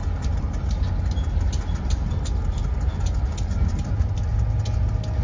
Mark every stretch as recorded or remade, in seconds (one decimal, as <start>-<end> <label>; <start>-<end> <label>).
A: 0.0-5.2 recorded